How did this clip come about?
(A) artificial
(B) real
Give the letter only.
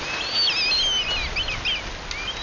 B